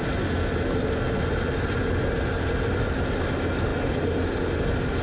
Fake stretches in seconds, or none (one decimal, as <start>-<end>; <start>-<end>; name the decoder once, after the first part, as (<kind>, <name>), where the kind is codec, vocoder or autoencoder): none

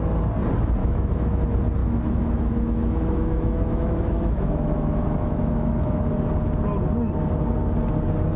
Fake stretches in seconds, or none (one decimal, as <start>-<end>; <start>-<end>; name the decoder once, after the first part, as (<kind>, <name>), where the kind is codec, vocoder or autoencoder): 0.8-1.4 (autoencoder, DAC-VAE); 1.8-6.1

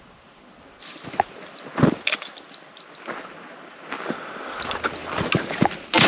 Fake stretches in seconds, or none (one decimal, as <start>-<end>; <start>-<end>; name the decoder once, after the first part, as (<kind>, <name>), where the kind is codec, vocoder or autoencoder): none